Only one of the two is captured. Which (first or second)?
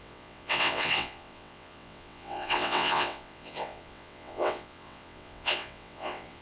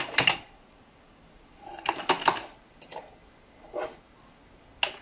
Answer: second